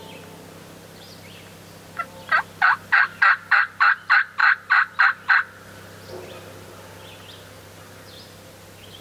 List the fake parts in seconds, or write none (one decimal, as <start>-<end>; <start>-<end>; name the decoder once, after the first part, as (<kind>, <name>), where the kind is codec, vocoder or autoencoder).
none